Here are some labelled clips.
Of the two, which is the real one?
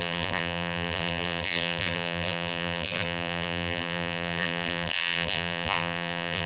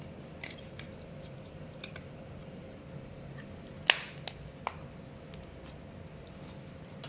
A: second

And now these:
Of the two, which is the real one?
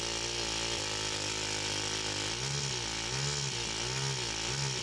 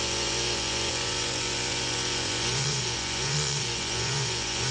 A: first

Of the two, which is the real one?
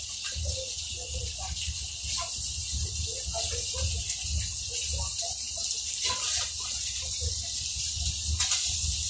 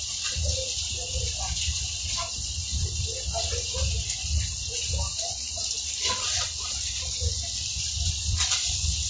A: first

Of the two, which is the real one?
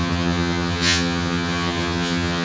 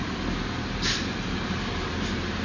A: second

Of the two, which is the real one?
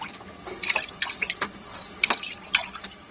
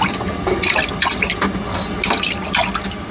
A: second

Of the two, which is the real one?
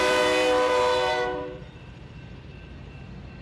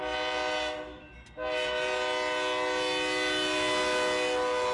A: second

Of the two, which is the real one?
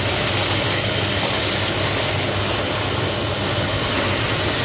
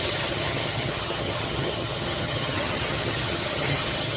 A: first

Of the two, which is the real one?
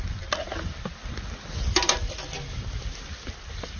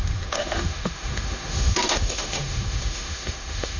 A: first